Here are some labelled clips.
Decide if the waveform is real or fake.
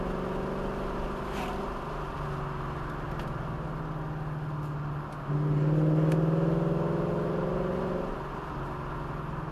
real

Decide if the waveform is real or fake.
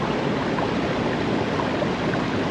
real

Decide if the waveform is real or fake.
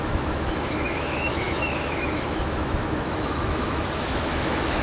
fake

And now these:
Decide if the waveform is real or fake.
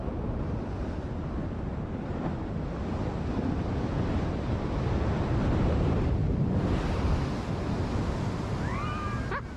real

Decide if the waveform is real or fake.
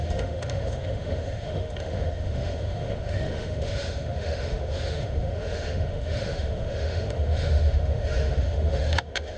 fake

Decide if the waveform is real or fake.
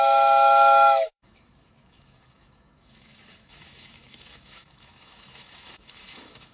fake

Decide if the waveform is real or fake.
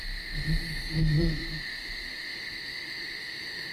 fake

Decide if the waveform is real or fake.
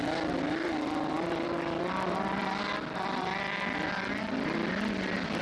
real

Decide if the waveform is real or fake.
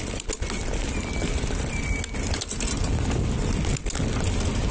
real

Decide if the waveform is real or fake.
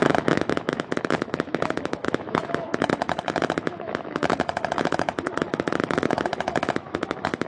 fake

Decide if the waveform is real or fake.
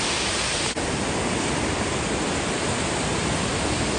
real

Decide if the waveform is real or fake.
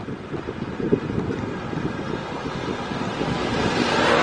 real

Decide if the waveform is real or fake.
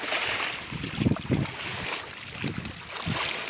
real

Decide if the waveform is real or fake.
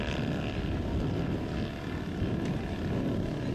real